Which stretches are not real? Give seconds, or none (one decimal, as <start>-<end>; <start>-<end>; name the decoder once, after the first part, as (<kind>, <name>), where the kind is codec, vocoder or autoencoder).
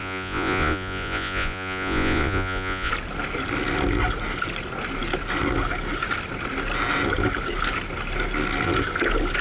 0.0-2.9 (vocoder, Vocos)